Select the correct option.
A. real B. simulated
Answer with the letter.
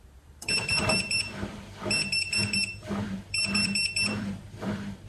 B